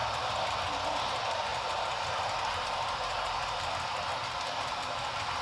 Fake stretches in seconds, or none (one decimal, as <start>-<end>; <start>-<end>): 1.0-1.5; 2.3-3.4; 4.6-5.4

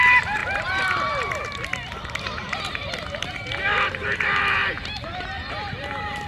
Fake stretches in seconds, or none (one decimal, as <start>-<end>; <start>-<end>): 0.0-2.8; 3.9-4.6; 5.5-6.3

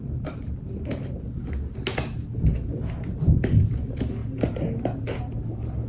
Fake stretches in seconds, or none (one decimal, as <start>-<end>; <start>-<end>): 0.4-1.5; 3.1-3.7

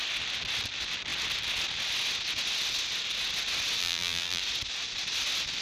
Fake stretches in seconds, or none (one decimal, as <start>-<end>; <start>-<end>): 3.8-4.4

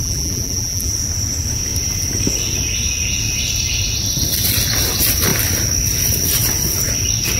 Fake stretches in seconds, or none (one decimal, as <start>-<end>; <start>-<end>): 0.0-0.9

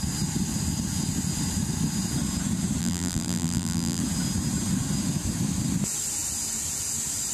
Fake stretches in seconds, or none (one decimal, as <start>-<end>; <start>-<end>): 2.8-4.0